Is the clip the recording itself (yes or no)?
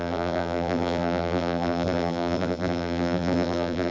no